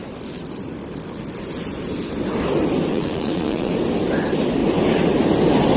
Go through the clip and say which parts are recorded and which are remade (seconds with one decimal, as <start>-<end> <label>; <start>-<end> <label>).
0.0-2.9 recorded; 2.9-3.7 remade; 3.7-5.8 recorded